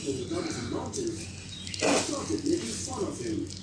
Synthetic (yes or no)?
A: no